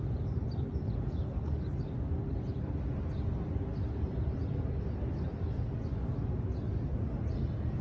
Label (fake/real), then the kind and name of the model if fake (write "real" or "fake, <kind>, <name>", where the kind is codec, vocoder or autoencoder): real